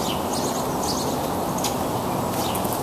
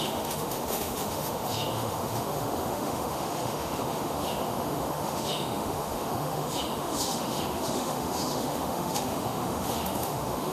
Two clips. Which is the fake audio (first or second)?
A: second